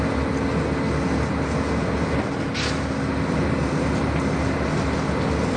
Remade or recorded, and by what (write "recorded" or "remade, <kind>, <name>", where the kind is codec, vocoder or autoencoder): recorded